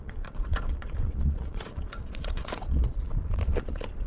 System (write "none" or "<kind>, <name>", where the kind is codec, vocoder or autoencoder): vocoder, Vocos